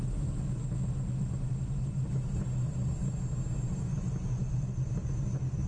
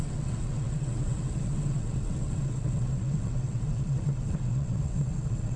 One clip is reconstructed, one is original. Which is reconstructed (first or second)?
second